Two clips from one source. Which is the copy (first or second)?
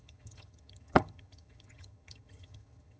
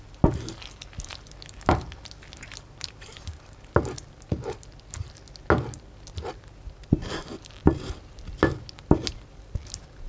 first